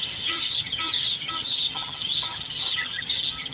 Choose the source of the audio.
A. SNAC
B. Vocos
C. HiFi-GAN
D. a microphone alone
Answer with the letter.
C